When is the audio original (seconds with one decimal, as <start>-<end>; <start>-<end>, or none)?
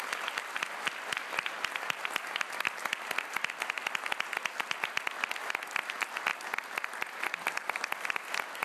0.0-8.6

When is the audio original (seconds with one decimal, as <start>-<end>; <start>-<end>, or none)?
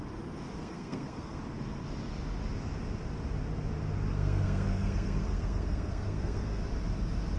0.0-0.6; 1.4-4.1; 6.6-7.4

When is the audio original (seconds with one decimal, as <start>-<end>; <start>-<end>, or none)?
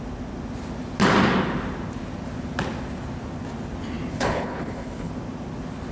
0.0-4.1; 5.1-5.9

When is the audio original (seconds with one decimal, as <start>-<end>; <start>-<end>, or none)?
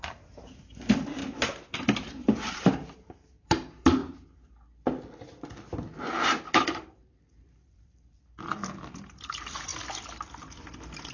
1.2-1.7; 4.0-6.2; 9.7-11.1